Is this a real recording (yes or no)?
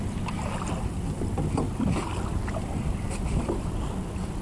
yes